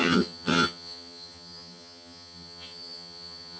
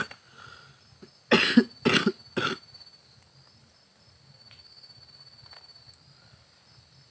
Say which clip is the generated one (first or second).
first